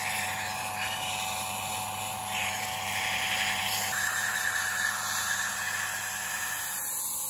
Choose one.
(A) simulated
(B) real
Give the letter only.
A